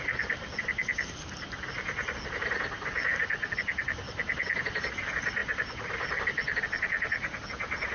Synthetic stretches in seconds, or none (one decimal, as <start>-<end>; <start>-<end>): none